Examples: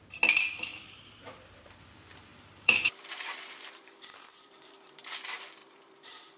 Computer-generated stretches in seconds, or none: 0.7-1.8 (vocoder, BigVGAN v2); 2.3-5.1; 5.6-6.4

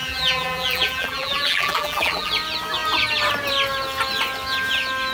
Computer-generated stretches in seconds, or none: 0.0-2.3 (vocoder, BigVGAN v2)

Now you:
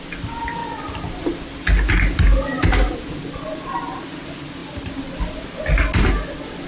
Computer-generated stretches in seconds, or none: 0.6-1.4 (vocoder, BigVGAN v2); 4.6-5.6